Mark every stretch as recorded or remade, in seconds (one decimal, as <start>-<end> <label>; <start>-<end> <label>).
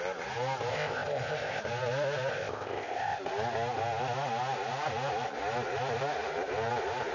0.0-0.7 recorded; 0.7-1.6 remade; 1.6-2.3 recorded; 2.3-3.2 remade; 3.2-7.1 recorded